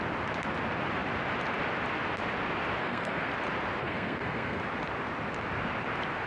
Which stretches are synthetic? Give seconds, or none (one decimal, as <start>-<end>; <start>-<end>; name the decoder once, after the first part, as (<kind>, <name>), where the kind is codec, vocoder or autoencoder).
2.8-3.3 (codec, SNAC); 3.8-4.6